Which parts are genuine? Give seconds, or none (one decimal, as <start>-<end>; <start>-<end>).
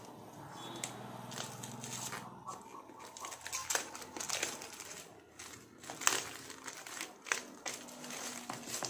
0.0-3.6; 4.2-8.9